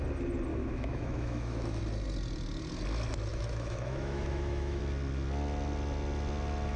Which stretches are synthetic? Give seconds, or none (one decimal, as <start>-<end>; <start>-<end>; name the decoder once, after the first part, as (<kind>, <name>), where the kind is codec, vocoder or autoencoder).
0.5-1.8 (autoencoder, DAC-VAE); 3.3-4.8